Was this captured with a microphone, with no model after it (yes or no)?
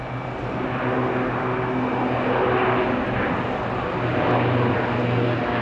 yes